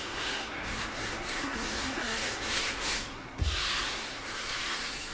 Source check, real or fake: fake